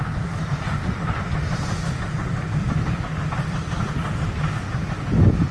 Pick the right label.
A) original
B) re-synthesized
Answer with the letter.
A